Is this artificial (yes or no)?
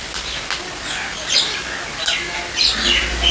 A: no